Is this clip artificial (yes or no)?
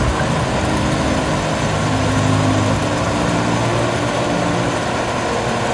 no